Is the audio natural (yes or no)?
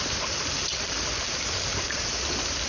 yes